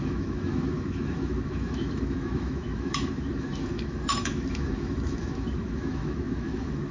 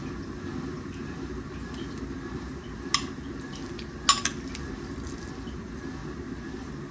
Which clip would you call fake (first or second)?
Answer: first